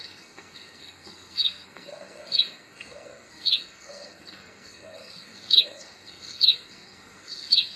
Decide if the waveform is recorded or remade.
remade